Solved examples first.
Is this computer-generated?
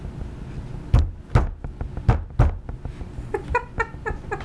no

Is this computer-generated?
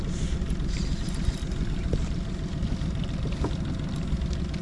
no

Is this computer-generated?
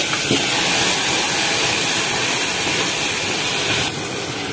no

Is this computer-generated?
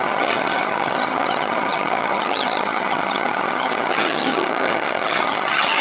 yes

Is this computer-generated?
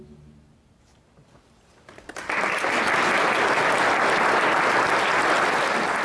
no